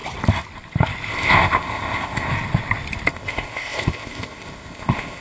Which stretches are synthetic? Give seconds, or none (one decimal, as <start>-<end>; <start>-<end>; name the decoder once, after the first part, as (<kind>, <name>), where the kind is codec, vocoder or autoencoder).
1.1-2.3 (codec, ZipCodec); 3.1-5.2

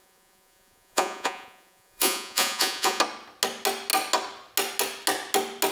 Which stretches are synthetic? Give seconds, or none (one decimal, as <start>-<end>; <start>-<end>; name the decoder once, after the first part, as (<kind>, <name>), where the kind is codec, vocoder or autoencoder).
0.0-3.0 (vocoder, Vocos)